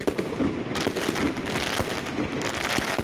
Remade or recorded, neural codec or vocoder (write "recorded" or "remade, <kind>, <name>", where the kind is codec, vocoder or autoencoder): recorded